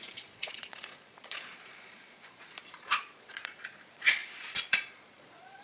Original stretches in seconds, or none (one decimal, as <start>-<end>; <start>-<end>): none